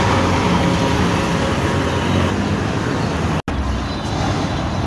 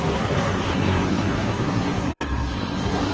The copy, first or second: second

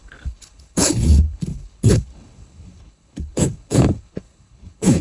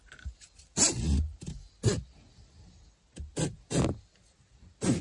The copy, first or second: first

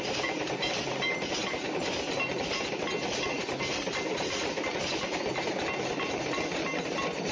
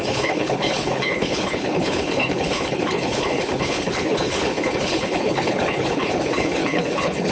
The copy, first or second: second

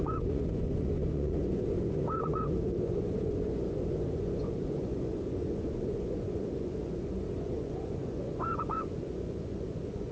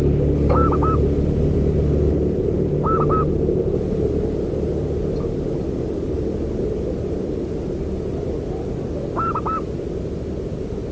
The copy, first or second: first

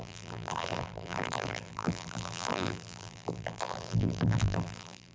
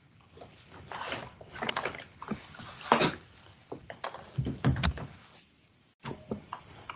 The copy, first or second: first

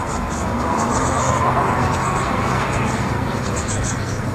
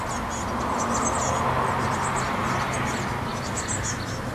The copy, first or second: first